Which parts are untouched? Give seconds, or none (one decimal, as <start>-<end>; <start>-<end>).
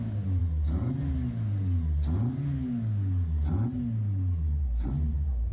0.0-5.5